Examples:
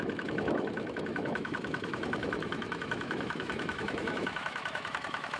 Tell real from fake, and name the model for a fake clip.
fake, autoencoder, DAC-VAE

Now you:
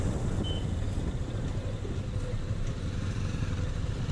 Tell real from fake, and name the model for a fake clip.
real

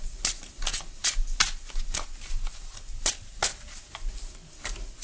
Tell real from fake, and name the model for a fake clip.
real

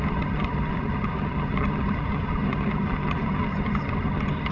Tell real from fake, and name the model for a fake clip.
fake, vocoder, HiFi-GAN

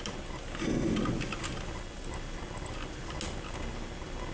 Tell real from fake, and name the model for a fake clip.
real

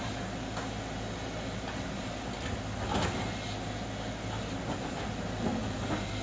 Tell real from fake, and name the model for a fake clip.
real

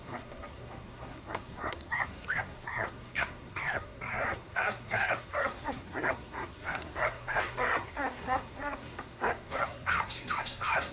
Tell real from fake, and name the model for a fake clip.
fake, codec, SNAC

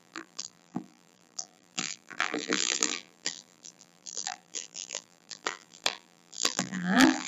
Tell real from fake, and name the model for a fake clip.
fake, vocoder, BigVGAN v2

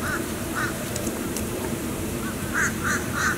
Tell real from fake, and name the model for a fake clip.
fake, vocoder, BigVGAN v2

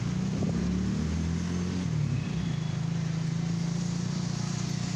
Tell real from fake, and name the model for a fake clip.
real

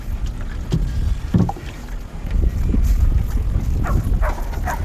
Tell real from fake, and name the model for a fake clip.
real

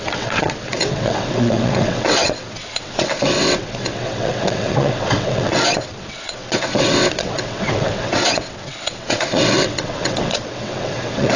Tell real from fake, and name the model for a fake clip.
fake, vocoder, WaveNeXt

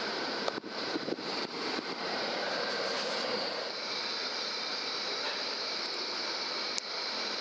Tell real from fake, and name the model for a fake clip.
fake, vocoder, BigVGAN v2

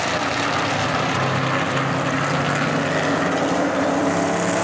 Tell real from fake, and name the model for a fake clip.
real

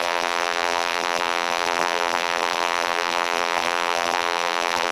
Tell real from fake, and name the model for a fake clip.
fake, vocoder, BigVGAN v2